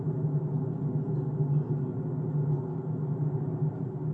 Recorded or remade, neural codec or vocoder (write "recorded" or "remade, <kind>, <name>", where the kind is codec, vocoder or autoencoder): recorded